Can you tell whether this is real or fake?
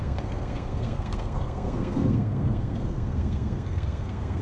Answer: fake